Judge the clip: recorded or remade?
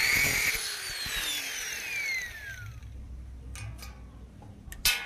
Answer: recorded